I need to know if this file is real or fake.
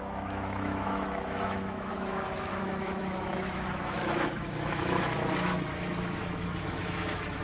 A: fake